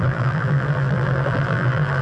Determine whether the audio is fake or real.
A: fake